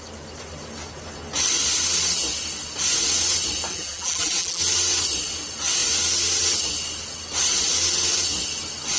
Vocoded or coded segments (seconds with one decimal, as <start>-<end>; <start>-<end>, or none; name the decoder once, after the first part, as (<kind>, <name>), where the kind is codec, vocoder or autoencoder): 3.7-4.6 (vocoder, BigVGAN v2)